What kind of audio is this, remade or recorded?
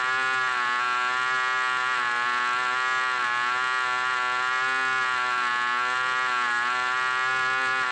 recorded